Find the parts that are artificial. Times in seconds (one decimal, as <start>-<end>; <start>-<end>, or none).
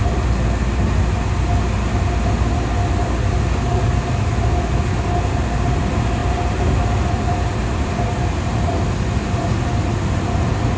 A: none